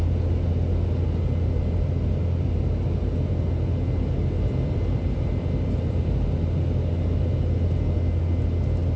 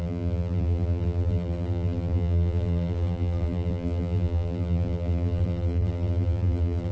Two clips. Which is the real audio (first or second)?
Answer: first